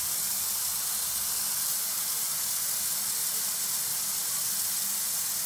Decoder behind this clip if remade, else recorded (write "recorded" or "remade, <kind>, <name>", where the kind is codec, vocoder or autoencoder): recorded